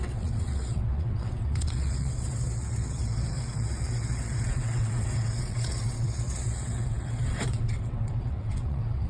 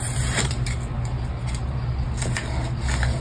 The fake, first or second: first